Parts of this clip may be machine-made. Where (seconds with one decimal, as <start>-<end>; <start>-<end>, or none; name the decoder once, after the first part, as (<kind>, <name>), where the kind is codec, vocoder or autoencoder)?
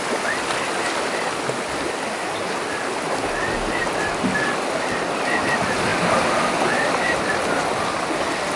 none